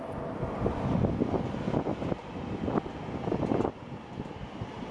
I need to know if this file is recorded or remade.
recorded